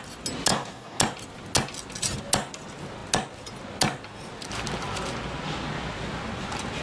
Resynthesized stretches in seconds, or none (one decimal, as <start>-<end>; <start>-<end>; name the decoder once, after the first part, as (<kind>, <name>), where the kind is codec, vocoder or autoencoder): 0.5-1.0 (codec, DAC)